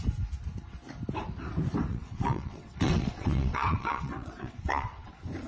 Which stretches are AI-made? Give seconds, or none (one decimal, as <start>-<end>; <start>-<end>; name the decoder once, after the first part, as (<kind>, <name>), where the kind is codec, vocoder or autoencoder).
1.9-5.1 (vocoder, WaveNeXt)